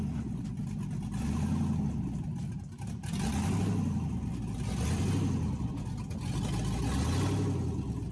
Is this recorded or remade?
recorded